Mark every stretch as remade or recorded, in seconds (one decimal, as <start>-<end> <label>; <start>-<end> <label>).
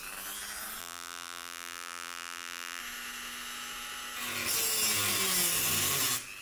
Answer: 0.0-0.8 recorded; 0.8-2.8 remade; 2.8-6.4 recorded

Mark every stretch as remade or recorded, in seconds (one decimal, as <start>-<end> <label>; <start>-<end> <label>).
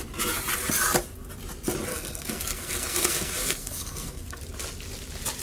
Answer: 0.0-1.9 recorded; 1.9-4.4 remade; 4.4-5.4 recorded